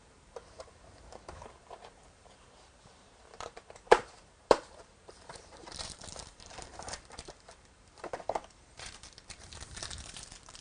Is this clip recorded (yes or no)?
no